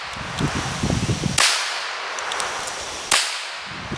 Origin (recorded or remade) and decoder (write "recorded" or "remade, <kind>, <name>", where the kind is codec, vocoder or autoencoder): recorded